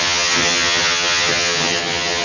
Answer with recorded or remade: remade